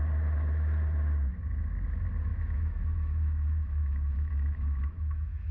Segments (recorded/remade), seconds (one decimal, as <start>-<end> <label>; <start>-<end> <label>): 0.0-2.3 recorded; 2.3-5.5 remade